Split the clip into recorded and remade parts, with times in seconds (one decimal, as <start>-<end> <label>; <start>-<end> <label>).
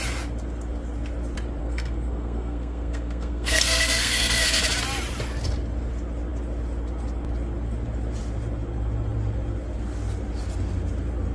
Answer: 0.0-1.6 recorded; 1.6-4.6 remade; 4.6-11.3 recorded